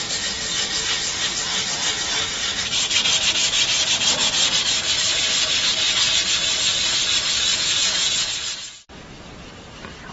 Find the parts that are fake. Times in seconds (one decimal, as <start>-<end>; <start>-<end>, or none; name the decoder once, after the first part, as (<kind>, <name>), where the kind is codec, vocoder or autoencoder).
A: 7.5-8.3 (vocoder, Vocos)